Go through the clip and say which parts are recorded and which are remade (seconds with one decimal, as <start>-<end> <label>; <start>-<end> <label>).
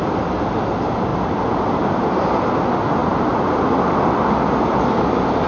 0.0-5.5 recorded